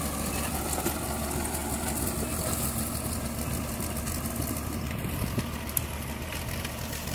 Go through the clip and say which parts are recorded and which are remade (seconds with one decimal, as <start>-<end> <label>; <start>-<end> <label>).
0.0-7.1 recorded